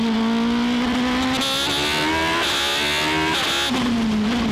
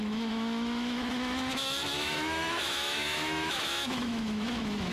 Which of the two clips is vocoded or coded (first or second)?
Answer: second